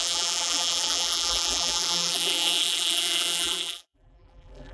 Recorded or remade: remade